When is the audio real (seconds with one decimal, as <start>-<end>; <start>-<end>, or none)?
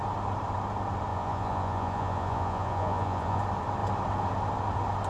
0.0-1.1; 3.4-5.1